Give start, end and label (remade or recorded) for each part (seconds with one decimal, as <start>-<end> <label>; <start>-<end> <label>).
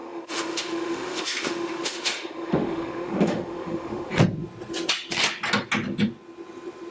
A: 0.0-4.1 remade; 4.1-6.9 recorded